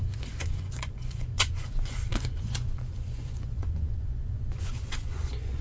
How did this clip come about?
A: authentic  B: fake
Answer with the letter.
B